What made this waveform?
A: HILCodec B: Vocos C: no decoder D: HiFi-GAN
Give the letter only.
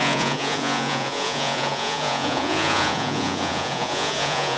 B